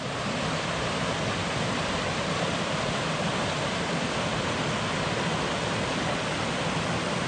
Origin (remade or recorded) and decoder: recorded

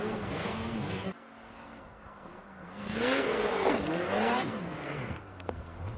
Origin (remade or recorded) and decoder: remade, codec, SNAC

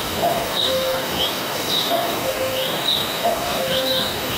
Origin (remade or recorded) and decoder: remade, codec, DAC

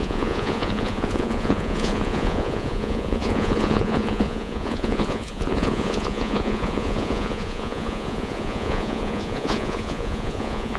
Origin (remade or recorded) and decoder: remade, vocoder, Vocos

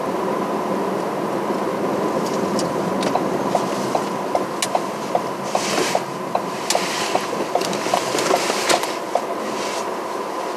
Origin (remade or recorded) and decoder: recorded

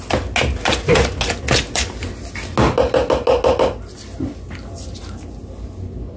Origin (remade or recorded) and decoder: recorded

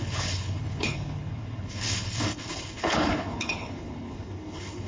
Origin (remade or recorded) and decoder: remade, codec, HILCodec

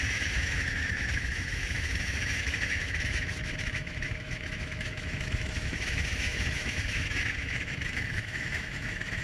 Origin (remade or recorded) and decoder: remade, autoencoder, DAC-VAE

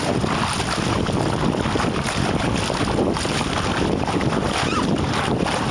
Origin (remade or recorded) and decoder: recorded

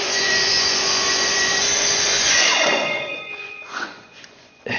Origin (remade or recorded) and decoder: remade, vocoder, Vocos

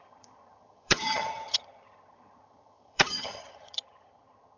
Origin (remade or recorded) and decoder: remade, vocoder, HiFi-GAN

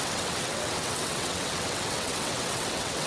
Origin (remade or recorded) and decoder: remade, vocoder, WaveNeXt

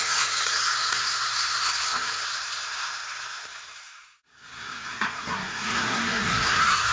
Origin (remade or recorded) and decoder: remade, codec, SNAC